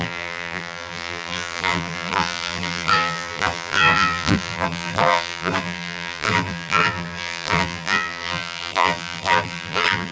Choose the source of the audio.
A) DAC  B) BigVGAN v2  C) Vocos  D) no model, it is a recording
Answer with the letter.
B